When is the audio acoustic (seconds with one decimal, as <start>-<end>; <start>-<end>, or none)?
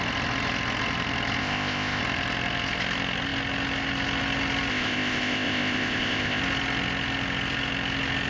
0.0-1.4; 2.0-4.7; 6.4-8.3